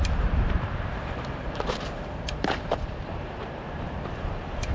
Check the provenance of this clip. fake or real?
fake